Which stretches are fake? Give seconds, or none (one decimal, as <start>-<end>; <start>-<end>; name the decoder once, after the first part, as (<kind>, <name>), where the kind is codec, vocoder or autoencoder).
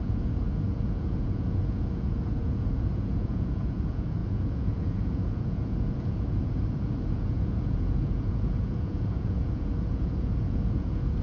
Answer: 0.0-11.2 (vocoder, Vocos)